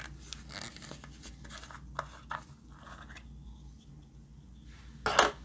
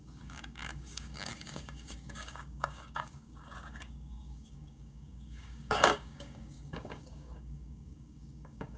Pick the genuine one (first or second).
first